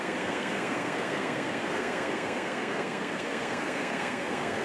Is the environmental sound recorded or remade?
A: remade